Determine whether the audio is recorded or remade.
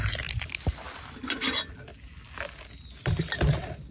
recorded